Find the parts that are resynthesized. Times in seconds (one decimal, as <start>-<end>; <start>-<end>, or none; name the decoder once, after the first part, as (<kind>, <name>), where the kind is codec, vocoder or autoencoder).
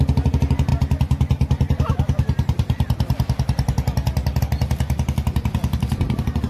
none